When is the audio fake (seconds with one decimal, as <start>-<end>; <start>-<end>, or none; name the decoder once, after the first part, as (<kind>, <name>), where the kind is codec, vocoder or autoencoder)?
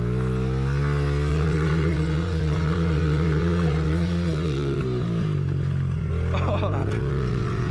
1.3-4.8 (vocoder, WaveNeXt); 6.8-7.7